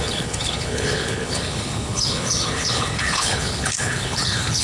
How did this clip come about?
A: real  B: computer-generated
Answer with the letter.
B